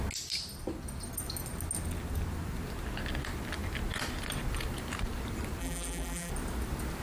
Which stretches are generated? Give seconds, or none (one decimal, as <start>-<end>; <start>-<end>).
5.6-6.3

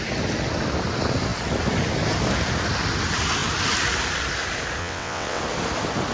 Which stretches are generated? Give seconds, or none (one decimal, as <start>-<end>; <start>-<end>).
4.8-5.4

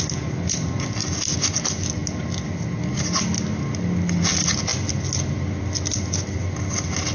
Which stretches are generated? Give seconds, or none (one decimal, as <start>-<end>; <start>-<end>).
1.0-1.6

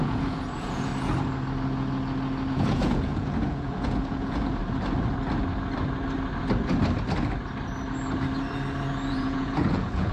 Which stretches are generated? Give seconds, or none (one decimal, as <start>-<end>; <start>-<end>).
0.0-0.9; 2.5-4.6; 9.1-10.1

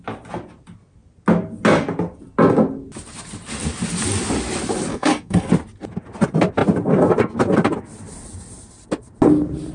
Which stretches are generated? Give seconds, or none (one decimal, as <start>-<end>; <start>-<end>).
4.9-5.5

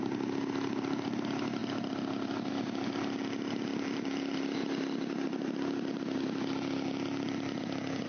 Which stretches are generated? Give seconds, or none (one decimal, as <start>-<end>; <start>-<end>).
none

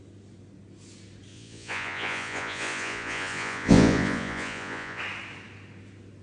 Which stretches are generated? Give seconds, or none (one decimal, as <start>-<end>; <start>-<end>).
1.3-5.0

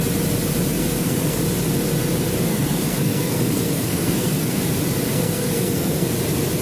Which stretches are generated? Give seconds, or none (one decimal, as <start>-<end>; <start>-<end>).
0.7-1.4; 2.5-4.6; 5.1-6.1